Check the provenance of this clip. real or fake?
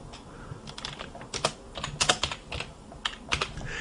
real